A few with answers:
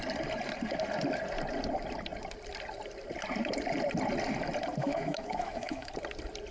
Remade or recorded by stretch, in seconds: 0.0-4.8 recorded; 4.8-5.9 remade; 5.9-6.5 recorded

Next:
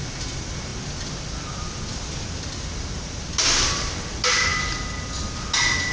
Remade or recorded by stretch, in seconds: 0.0-5.9 recorded